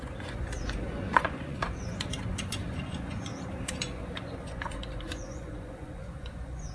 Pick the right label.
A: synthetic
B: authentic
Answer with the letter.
A